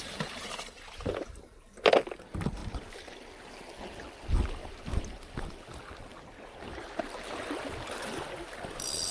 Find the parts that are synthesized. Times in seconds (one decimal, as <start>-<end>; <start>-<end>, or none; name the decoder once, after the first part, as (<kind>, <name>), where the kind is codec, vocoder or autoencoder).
2.6-3.3 (vocoder, BigVGAN v2); 4.6-5.4; 6.1-7.8